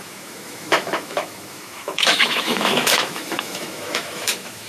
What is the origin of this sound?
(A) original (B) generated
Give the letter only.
B